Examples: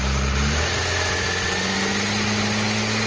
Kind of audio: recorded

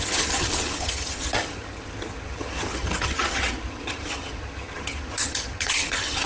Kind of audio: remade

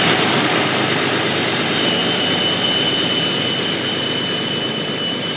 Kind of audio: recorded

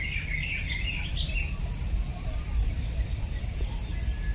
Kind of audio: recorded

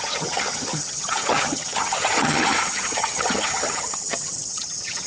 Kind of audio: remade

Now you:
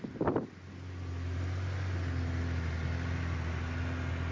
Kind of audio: recorded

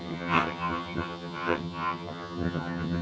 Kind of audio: remade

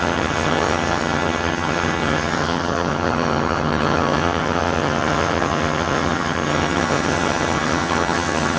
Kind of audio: remade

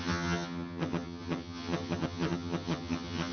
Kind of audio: remade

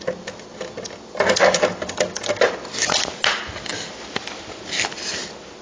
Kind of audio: recorded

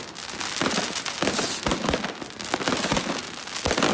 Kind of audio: recorded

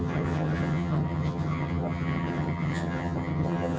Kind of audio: remade